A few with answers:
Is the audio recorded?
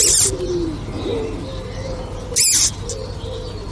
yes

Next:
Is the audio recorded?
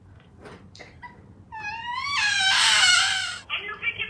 no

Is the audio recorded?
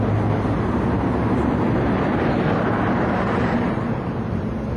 yes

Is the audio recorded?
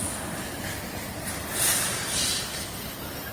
yes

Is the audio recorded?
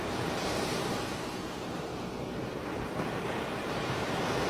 no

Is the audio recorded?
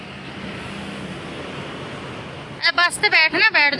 yes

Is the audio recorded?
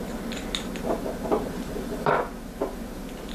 yes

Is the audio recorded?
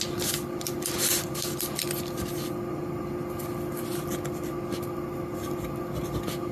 yes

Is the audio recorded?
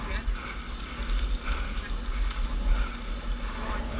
yes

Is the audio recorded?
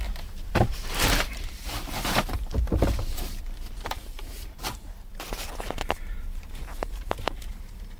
no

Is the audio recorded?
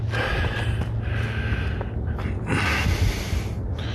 yes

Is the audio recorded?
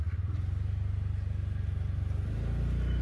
yes